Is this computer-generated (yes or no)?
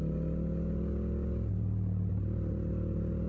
no